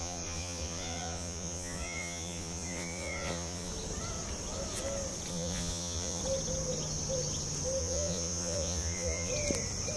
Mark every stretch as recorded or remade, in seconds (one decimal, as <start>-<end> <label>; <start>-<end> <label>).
0.0-3.7 remade; 3.7-5.3 recorded; 5.3-6.2 remade; 6.2-7.8 recorded; 7.8-9.3 remade; 9.3-10.0 recorded